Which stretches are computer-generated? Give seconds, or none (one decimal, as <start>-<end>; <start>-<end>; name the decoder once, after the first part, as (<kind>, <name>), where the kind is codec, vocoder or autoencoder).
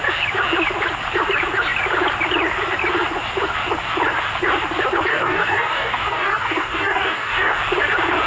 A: 5.1-7.6 (codec, DAC)